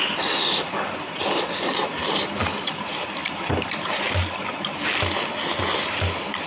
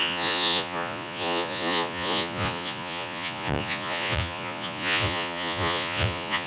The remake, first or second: second